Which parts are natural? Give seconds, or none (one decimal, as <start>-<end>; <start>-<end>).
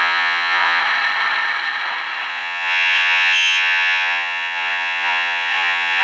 0.8-2.3